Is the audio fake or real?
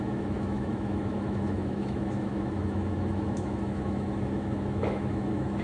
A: fake